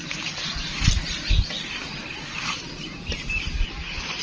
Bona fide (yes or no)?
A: yes